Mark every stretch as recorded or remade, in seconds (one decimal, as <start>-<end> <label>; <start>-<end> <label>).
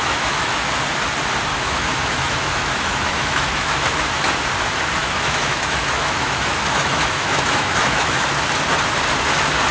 0.0-0.7 remade; 0.7-1.5 recorded; 1.5-4.2 remade; 4.2-5.0 recorded; 5.0-8.3 remade; 8.3-9.7 recorded